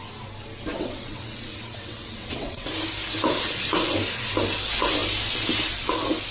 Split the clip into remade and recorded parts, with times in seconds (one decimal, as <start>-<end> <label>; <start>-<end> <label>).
0.0-0.7 recorded; 0.7-2.7 remade; 2.7-6.3 recorded